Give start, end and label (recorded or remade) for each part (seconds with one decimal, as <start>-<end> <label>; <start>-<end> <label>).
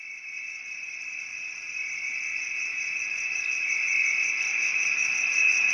0.0-4.5 recorded; 4.5-5.1 remade; 5.1-5.7 recorded